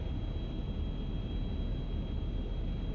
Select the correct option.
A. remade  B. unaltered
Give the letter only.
B